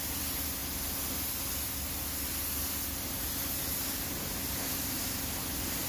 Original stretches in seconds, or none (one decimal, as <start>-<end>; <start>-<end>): 0.0-5.9